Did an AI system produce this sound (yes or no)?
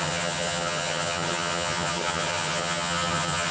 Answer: yes